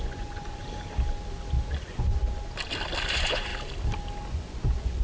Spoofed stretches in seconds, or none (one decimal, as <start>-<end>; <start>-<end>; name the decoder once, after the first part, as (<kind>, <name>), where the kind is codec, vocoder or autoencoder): 0.0-0.6 (vocoder, Vocos); 1.8-2.2; 3.1-3.5; 4.3-5.0